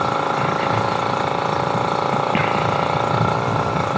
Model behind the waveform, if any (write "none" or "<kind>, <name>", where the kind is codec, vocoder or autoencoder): none